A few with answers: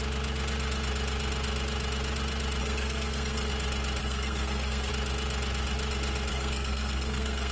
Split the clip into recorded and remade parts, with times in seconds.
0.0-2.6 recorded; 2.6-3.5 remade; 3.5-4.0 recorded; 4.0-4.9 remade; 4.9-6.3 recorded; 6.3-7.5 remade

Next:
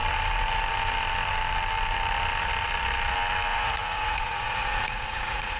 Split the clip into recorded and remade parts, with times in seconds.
0.0-3.5 recorded; 3.5-5.6 remade

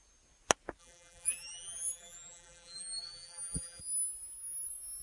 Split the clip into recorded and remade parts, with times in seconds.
0.0-0.8 recorded; 0.8-3.8 remade; 3.8-5.0 recorded